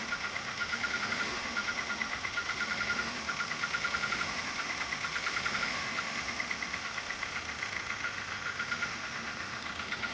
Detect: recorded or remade remade